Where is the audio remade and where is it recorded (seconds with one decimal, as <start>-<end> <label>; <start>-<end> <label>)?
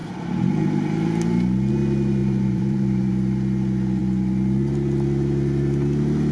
0.0-2.2 recorded; 2.2-3.1 remade; 3.1-6.3 recorded